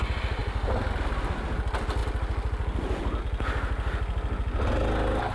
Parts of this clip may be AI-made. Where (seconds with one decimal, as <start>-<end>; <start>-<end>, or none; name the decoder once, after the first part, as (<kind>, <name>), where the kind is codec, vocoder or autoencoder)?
none